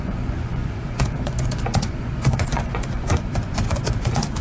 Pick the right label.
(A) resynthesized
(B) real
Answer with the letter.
A